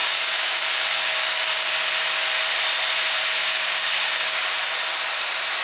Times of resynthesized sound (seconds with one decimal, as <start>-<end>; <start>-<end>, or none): 0.0-1.7; 3.4-4.4